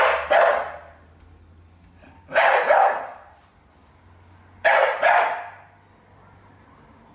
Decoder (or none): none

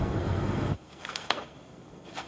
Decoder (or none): codec, SNAC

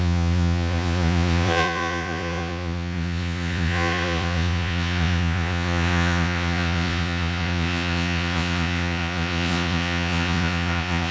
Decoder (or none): vocoder, Vocos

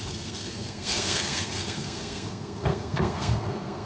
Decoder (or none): codec, SNAC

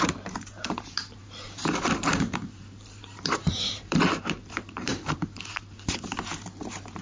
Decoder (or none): vocoder, BigVGAN v2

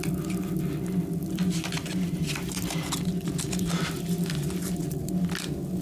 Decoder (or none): none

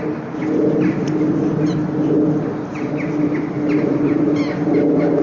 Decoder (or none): none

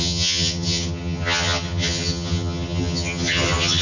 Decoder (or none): vocoder, HiFi-GAN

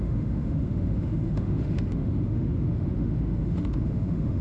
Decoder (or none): autoencoder, DAC-VAE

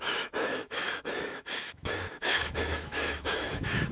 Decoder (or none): autoencoder, DAC-VAE